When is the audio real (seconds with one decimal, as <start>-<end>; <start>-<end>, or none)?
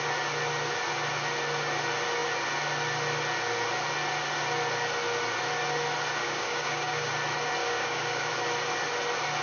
0.0-6.2; 7.1-7.6; 8.3-9.4